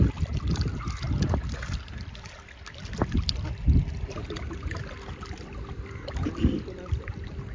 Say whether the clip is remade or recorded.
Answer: recorded